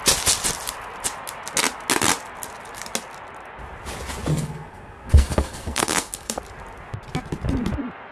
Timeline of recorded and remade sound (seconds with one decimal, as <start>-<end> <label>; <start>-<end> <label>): 0.0-4.3 recorded; 4.3-6.4 remade; 6.4-8.1 recorded